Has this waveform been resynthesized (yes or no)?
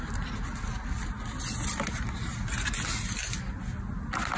no